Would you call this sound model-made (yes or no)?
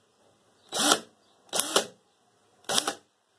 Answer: no